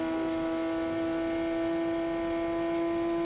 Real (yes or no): yes